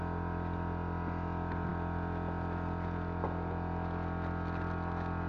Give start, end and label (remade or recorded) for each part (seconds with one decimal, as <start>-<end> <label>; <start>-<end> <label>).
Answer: 0.0-5.3 recorded